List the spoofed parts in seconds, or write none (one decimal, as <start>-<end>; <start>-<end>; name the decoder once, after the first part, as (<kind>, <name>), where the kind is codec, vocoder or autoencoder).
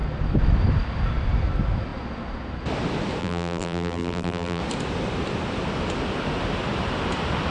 3.2-4.6 (vocoder, BigVGAN v2)